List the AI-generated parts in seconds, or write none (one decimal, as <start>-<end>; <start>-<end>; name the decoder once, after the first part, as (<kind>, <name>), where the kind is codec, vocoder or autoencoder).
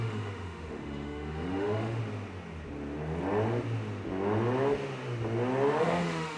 0.0-2.0 (autoencoder, DAC-VAE); 5.8-6.4